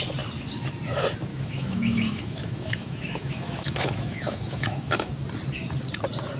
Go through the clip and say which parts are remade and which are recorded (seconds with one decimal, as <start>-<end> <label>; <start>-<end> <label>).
0.0-1.3 recorded; 1.3-5.1 remade; 5.1-6.4 recorded